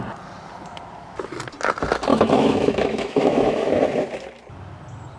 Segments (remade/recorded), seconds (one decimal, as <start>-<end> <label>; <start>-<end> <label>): 0.0-2.1 recorded; 2.1-3.8 remade; 3.8-5.2 recorded